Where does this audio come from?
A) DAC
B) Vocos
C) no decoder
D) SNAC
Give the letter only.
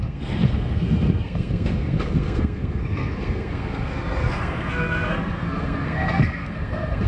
D